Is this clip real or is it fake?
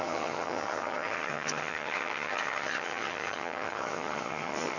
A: fake